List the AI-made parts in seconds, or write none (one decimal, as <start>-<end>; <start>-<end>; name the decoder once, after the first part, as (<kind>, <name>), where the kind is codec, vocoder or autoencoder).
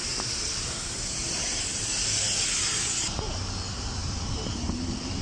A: 0.0-2.6 (vocoder, BigVGAN v2); 4.0-5.2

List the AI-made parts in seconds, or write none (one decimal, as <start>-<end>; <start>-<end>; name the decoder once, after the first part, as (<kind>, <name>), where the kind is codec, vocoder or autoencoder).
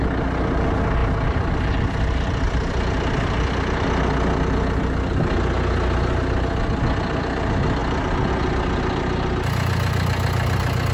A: 1.0-3.8 (vocoder, BigVGAN v2); 7.8-8.3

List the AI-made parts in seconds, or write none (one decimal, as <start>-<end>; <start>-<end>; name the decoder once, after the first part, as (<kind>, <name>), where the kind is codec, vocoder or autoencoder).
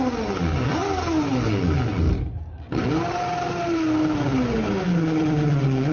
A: none